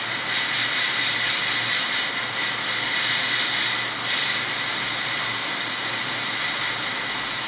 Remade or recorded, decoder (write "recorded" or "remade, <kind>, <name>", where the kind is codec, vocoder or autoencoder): recorded